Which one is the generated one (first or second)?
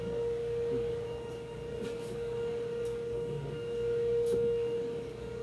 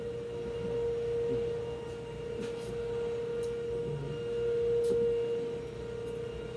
first